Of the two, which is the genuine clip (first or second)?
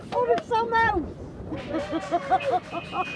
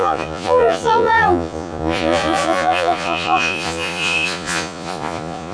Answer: first